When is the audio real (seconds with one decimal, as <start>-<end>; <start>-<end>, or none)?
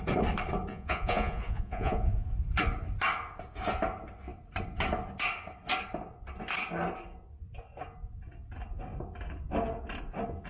0.0-0.7; 2.3-10.5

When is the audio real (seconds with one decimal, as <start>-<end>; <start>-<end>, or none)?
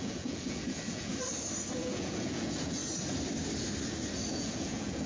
1.1-1.8; 2.8-4.3